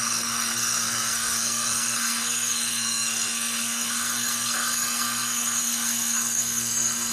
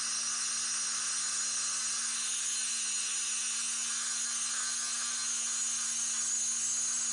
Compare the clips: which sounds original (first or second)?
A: second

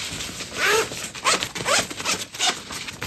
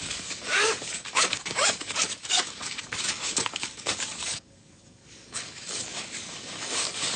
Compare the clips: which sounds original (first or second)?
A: first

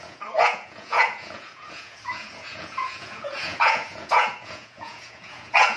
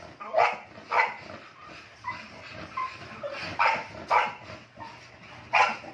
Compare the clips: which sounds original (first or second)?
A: second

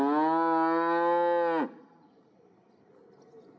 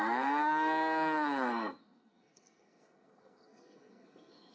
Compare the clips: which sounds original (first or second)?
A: first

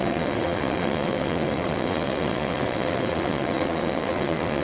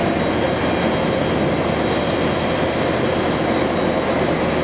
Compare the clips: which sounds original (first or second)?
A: second